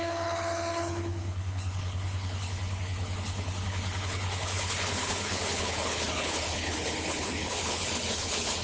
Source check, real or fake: fake